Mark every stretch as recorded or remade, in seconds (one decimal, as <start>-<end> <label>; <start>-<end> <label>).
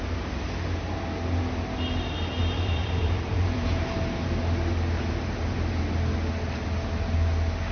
0.0-2.4 recorded; 2.4-4.0 remade; 4.0-7.7 recorded